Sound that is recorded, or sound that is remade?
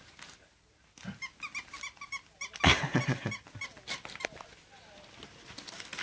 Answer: recorded